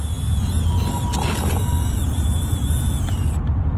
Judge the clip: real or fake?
real